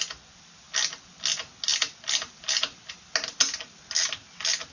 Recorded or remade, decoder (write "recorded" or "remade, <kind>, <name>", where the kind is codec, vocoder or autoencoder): recorded